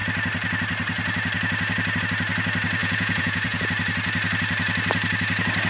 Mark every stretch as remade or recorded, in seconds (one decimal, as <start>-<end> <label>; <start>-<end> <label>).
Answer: 0.0-2.8 recorded; 2.8-3.6 remade; 3.6-5.7 recorded

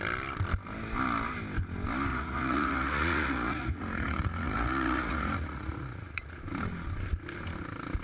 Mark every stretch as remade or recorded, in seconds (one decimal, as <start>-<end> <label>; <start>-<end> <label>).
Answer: 0.0-2.1 recorded; 2.1-6.4 remade; 6.4-8.0 recorded

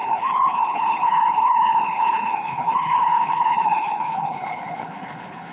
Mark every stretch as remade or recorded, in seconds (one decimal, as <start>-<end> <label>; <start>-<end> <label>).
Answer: 0.0-5.5 remade

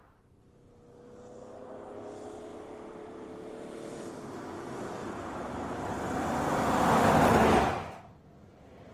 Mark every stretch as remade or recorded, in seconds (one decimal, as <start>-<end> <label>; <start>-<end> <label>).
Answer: 0.0-2.5 recorded; 2.5-4.0 remade; 4.0-5.0 recorded; 5.0-8.0 remade; 8.0-8.9 recorded

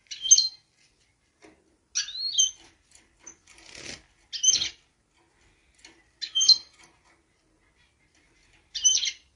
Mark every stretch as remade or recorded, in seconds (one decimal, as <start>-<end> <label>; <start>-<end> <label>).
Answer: 0.0-9.4 recorded

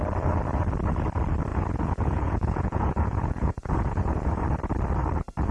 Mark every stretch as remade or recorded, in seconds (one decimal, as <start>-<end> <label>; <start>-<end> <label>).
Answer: 0.0-1.5 recorded; 1.5-4.4 remade; 4.4-5.5 recorded